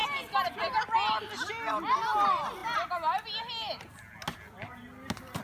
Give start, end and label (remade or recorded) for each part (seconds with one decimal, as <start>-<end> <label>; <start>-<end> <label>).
0.0-5.4 recorded